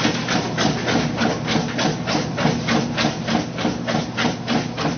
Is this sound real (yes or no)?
yes